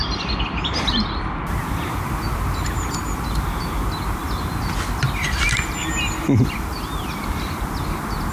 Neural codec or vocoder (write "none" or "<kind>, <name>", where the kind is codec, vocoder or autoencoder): none